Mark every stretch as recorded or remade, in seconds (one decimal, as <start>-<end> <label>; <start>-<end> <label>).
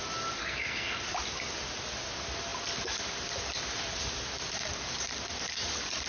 0.0-0.4 recorded; 0.4-1.0 remade; 1.0-6.1 recorded